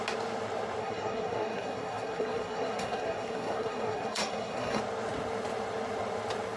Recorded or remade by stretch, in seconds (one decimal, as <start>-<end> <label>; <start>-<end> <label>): 0.0-0.8 recorded; 0.8-4.8 remade; 4.8-6.6 recorded